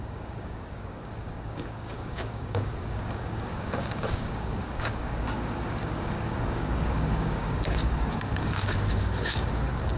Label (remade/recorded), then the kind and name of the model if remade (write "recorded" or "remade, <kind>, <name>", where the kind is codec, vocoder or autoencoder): remade, codec, DAC